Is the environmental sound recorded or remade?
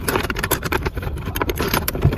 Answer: remade